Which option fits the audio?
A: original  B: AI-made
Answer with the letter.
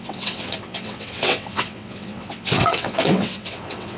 B